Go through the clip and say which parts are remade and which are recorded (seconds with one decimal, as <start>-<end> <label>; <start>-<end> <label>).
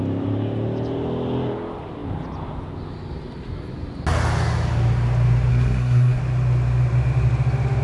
0.0-5.5 recorded; 5.5-6.2 remade; 6.2-7.8 recorded